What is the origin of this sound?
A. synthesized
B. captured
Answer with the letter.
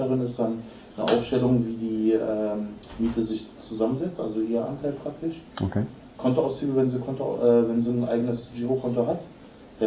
B